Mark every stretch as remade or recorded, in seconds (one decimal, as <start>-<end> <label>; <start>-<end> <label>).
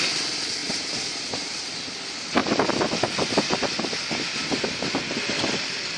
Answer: 0.0-0.6 recorded; 0.6-1.8 remade; 1.8-6.0 recorded